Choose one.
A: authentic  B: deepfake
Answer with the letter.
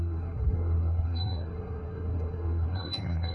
B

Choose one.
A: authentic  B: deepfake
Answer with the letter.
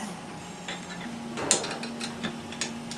A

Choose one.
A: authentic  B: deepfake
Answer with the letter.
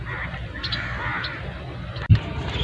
A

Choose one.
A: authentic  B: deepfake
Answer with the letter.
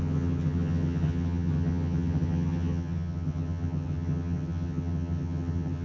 B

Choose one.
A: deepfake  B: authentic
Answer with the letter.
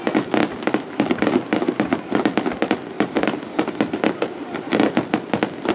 B